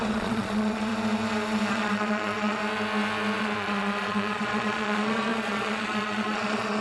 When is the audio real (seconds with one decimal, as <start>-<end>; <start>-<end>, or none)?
0.9-1.7; 2.6-3.4